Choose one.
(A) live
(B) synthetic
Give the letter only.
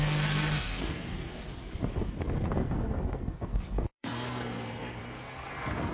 B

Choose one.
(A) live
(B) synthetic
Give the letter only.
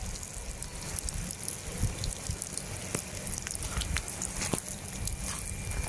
A